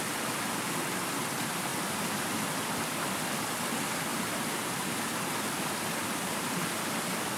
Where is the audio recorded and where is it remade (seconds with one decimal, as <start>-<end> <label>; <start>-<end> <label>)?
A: 0.0-4.1 recorded; 4.1-5.2 remade; 5.2-6.0 recorded; 6.0-6.8 remade; 6.8-7.4 recorded